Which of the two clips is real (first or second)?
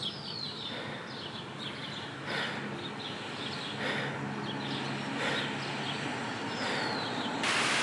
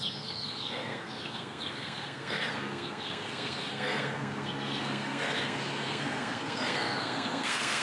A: first